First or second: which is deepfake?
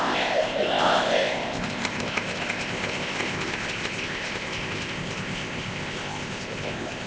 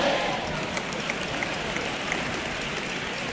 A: first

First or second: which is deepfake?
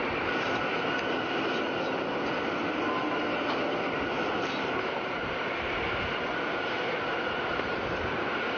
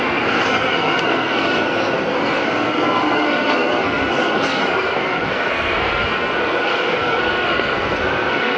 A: second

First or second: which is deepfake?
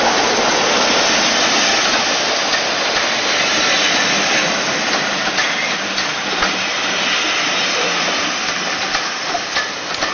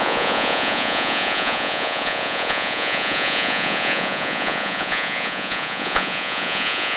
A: second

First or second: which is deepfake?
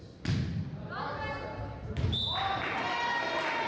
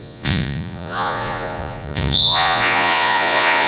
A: second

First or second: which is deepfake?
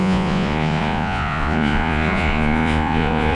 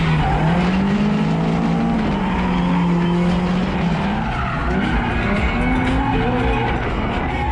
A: first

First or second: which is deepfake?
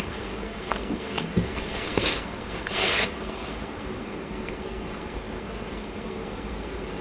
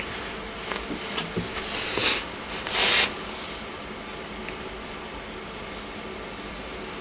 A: first